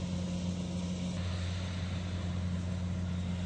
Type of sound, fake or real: real